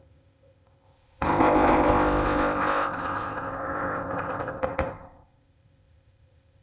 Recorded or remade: remade